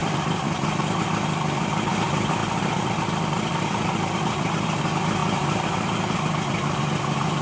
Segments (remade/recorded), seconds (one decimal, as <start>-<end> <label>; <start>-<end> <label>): 0.0-7.4 remade